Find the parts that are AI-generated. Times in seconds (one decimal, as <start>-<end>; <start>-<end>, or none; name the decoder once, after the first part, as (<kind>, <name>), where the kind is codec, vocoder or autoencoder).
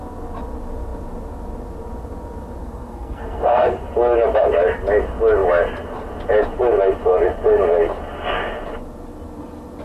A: 2.6-3.8 (codec, SNAC)